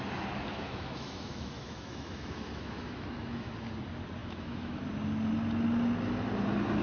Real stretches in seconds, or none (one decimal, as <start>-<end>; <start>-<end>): 0.0-0.5; 3.5-4.2; 4.8-6.8